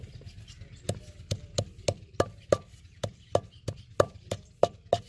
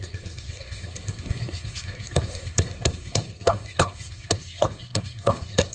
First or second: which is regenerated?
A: second